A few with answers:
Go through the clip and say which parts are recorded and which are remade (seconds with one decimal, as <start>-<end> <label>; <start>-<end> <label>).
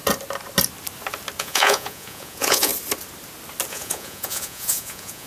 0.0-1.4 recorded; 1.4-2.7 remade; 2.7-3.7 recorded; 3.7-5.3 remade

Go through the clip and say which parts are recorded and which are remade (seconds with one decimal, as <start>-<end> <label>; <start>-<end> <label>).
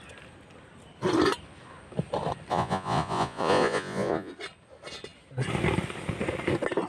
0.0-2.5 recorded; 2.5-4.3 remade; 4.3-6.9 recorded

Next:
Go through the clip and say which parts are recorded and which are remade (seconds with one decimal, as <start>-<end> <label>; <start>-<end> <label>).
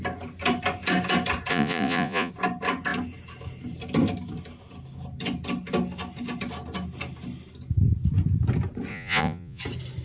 0.0-1.5 recorded; 1.5-2.3 remade; 2.3-8.9 recorded; 8.9-9.6 remade; 9.6-10.0 recorded